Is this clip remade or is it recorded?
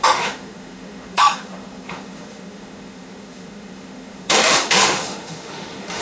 remade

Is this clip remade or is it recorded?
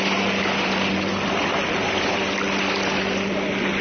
recorded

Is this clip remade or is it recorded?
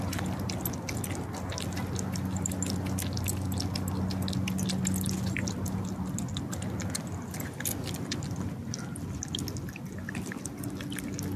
recorded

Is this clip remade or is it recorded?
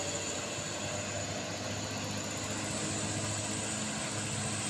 recorded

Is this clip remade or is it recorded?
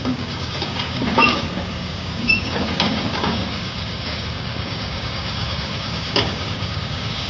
remade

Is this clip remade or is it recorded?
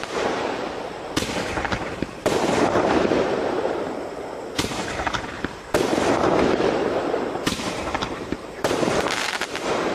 remade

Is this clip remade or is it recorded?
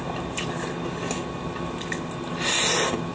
recorded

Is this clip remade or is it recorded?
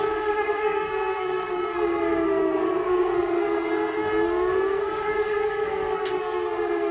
remade